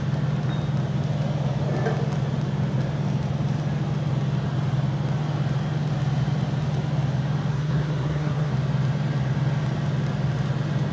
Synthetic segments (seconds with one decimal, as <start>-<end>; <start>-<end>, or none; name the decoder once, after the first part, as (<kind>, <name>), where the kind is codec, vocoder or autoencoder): 7.5-8.5 (codec, SNAC)

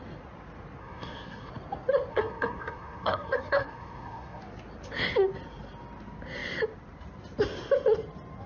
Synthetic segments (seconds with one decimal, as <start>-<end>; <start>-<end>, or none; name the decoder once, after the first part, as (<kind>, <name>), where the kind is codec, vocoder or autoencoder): 0.8-1.5 (codec, SNAC); 2.1-4.4

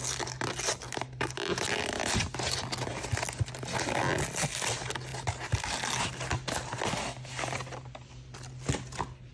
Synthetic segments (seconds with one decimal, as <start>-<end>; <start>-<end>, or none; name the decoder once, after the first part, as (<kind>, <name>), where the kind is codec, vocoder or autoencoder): none